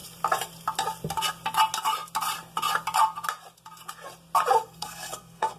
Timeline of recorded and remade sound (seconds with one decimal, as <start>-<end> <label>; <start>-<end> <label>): 0.0-4.6 recorded; 4.6-5.6 remade